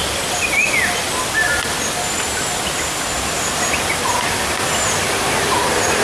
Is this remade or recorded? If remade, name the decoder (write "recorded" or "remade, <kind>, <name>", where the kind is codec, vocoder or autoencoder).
recorded